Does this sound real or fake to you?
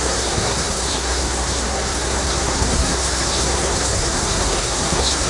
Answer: fake